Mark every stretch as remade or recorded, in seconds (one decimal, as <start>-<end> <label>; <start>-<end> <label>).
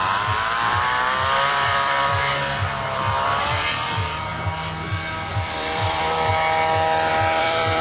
0.0-4.3 remade; 4.3-5.3 recorded; 5.3-6.3 remade; 6.3-7.1 recorded; 7.1-7.8 remade